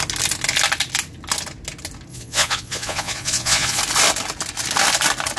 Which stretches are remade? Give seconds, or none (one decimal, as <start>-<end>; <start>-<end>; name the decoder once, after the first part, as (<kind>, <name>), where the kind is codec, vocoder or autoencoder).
2.1-3.8 (vocoder, Vocos)